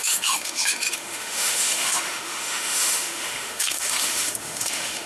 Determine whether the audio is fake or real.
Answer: fake